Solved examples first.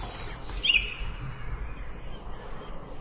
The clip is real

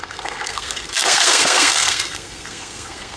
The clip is fake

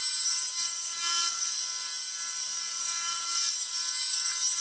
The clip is real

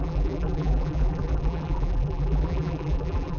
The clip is fake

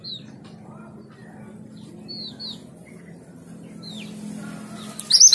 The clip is real